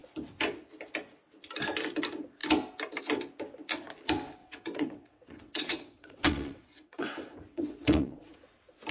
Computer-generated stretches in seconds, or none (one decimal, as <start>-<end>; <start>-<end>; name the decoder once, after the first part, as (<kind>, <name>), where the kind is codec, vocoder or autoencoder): 4.4-8.3 (vocoder, WaveNeXt)